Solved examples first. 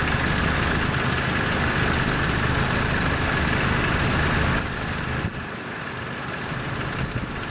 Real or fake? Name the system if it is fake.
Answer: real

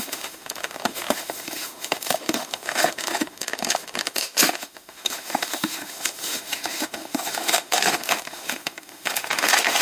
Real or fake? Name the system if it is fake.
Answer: fake, autoencoder, DAC-VAE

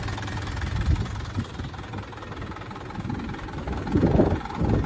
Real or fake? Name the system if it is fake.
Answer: real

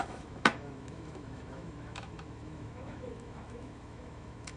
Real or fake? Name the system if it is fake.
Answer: fake, autoencoder, DAC-VAE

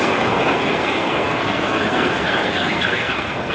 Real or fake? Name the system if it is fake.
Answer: fake, codec, SNAC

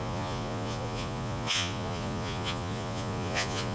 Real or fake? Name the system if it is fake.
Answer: fake, vocoder, Vocos